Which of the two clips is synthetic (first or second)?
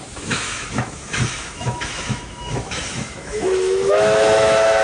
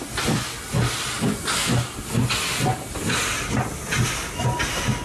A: first